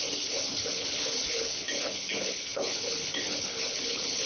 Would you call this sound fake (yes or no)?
yes